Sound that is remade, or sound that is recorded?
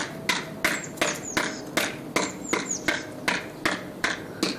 recorded